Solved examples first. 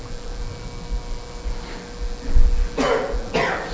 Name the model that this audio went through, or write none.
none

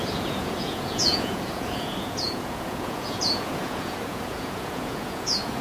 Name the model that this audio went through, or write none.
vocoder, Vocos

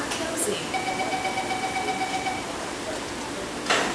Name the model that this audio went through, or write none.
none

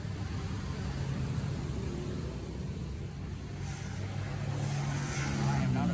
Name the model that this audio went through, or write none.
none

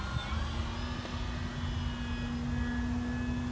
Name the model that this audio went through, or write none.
none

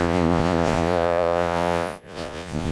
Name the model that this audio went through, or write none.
vocoder, Vocos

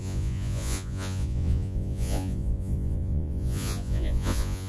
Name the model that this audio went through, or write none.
vocoder, Vocos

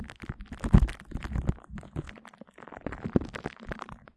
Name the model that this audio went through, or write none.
none